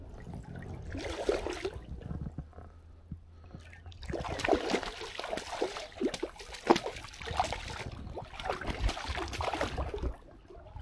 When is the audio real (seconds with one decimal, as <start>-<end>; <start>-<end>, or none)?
0.0-10.8